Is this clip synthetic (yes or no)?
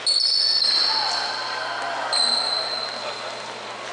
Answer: no